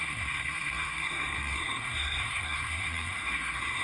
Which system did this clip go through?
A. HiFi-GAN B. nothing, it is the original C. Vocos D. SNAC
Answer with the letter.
D